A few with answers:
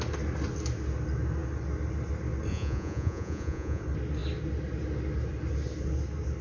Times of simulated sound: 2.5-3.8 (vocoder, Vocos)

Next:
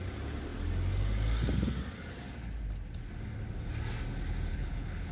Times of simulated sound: 4.5-5.1 (codec, HILCodec)

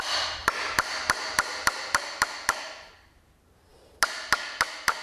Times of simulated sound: 0.4-2.2 (vocoder, BigVGAN v2)

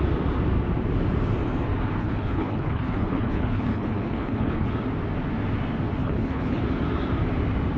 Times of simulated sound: 2.0-4.7 (codec, HILCodec); 6.0-6.6

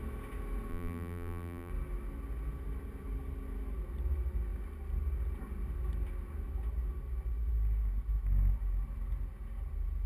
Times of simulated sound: 0.7-1.7 (vocoder, BigVGAN v2)

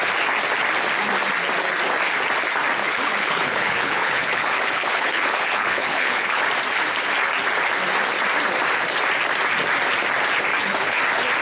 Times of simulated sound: 2.8-6.4 (codec, HILCodec); 10.5-11.0

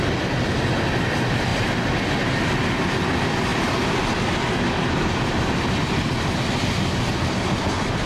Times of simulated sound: none